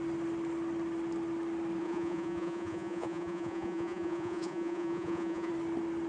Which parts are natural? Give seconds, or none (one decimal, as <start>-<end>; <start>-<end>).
0.0-1.8; 5.5-6.1